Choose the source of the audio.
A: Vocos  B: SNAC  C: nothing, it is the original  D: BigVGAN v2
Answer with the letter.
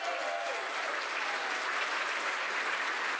C